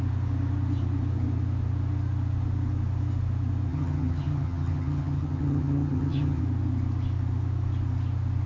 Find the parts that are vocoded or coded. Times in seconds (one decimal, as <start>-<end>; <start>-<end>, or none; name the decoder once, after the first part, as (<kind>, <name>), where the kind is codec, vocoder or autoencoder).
3.7-6.4 (vocoder, HiFi-GAN)